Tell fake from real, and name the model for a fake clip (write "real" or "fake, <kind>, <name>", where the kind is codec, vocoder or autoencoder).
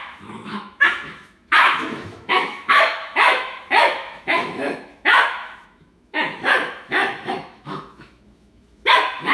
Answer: fake, autoencoder, DAC-VAE